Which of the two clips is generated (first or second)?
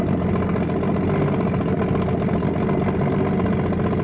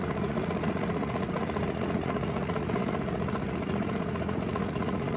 second